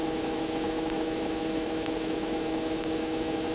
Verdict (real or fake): fake